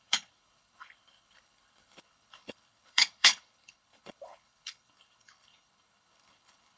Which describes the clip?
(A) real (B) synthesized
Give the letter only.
B